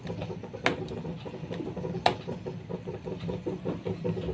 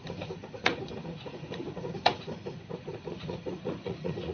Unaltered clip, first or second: first